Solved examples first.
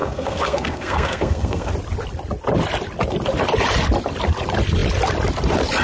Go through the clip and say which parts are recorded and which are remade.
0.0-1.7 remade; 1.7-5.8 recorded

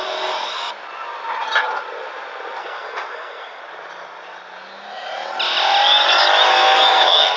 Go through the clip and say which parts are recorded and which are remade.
0.0-2.6 recorded; 2.6-3.6 remade; 3.6-6.5 recorded; 6.5-7.4 remade

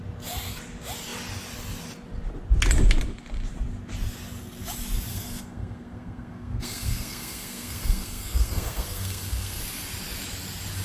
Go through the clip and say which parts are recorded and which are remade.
0.0-5.1 recorded; 5.1-9.6 remade; 9.6-10.8 recorded

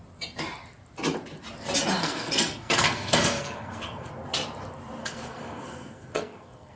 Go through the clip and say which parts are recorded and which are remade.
0.0-2.0 recorded; 2.0-4.1 remade; 4.1-5.0 recorded; 5.0-6.8 remade

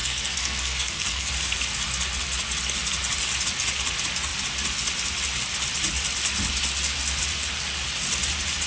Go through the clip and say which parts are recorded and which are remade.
0.0-1.3 remade; 1.3-8.7 recorded

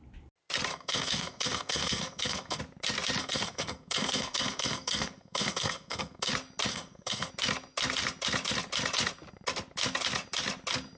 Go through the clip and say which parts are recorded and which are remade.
0.0-0.7 recorded; 0.7-2.6 remade; 2.6-3.2 recorded; 3.2-6.3 remade; 6.3-6.7 recorded; 6.7-7.3 remade; 7.3-11.0 recorded

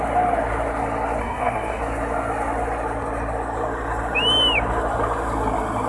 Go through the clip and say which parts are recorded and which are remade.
0.0-1.2 recorded; 1.2-1.8 remade; 1.8-5.9 recorded

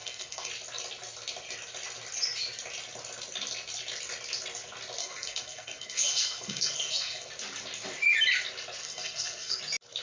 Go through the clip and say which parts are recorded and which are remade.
0.0-0.5 remade; 0.5-5.0 recorded; 5.0-7.3 remade; 7.3-8.8 recorded; 8.8-9.6 remade; 9.6-10.0 recorded